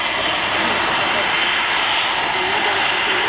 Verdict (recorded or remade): remade